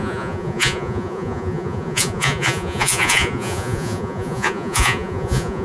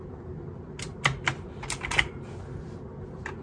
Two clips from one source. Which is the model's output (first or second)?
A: first